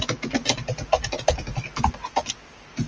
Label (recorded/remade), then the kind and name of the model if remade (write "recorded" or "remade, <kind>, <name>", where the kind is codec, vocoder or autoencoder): recorded